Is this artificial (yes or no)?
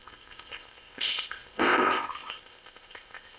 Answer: yes